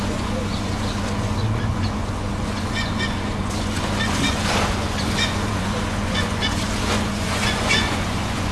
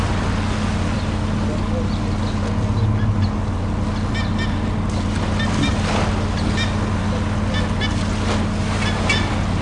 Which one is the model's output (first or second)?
first